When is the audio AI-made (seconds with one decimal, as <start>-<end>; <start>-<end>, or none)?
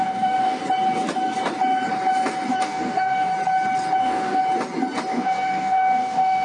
0.0-0.6; 2.5-3.3; 4.0-4.4; 5.1-6.4